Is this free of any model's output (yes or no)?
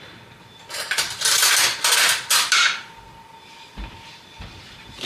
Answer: yes